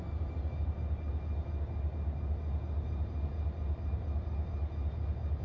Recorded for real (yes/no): yes